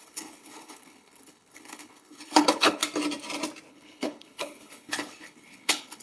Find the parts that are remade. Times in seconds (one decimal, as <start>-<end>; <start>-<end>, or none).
0.0-2.8; 3.7-6.0